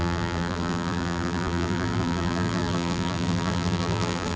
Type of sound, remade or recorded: remade